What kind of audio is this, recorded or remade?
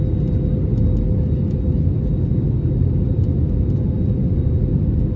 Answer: recorded